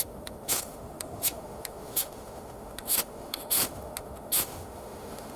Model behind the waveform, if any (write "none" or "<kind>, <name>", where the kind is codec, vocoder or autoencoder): autoencoder, DAC-VAE